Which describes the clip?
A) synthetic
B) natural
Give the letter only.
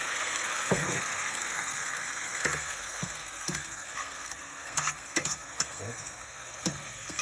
A